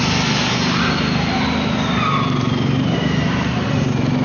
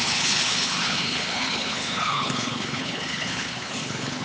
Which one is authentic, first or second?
first